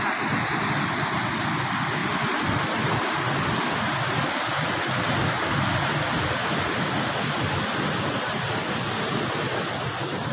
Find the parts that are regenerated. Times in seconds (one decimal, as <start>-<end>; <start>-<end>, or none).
none